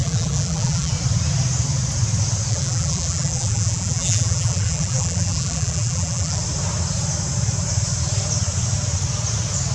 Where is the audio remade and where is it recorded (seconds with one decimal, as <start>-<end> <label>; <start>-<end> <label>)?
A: 0.0-0.9 remade; 0.9-2.5 recorded; 2.5-6.4 remade; 6.4-9.7 recorded